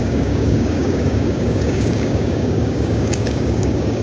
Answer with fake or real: fake